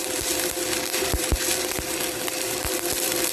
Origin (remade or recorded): remade